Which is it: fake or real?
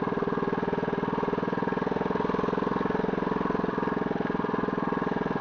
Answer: real